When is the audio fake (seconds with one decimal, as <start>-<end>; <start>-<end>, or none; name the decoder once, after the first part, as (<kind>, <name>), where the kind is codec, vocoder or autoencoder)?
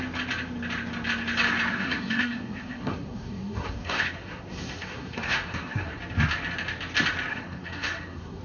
1.7-6.0 (codec, SNAC); 7.3-8.4